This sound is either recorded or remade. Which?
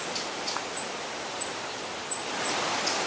recorded